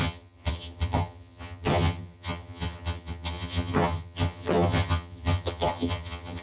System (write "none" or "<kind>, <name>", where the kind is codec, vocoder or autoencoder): vocoder, HiFi-GAN